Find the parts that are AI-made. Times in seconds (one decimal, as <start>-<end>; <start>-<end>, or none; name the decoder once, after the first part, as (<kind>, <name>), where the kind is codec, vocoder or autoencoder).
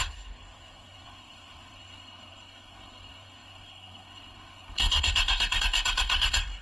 0.0-6.6 (codec, SNAC)